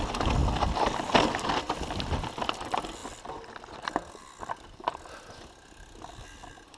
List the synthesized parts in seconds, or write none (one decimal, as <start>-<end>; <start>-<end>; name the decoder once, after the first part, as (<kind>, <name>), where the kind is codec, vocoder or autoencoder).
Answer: none